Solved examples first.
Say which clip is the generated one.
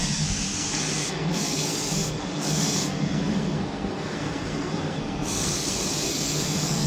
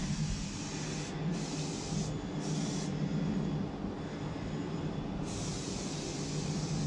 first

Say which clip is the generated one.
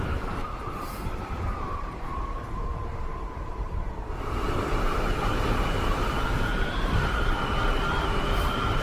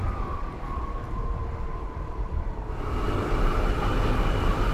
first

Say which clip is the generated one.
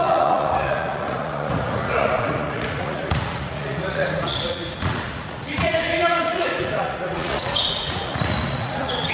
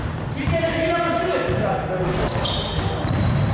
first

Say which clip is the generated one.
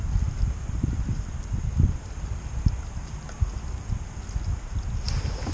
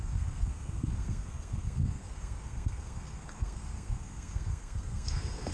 second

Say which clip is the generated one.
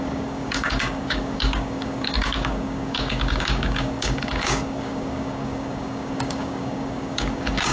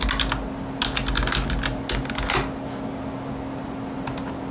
first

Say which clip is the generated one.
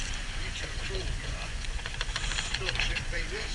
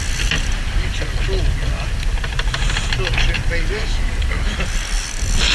first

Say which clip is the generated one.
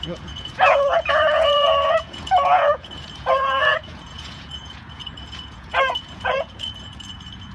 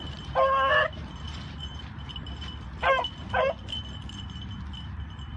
first